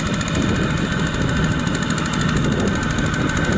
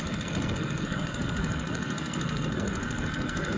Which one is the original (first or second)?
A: first